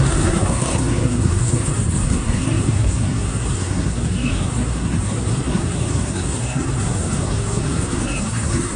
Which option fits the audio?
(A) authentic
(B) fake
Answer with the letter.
B